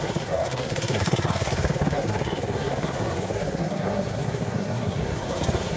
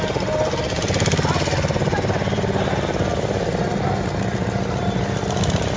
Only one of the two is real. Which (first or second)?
second